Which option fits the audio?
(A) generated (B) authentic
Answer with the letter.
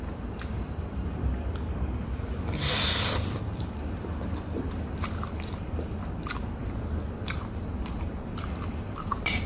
A